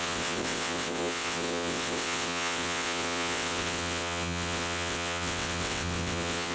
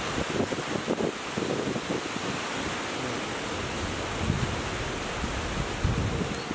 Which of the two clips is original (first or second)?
second